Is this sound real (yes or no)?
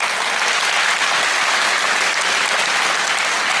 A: yes